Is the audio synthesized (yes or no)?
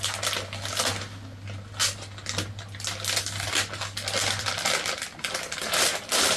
no